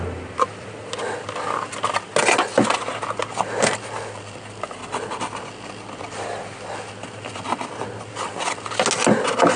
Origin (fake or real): real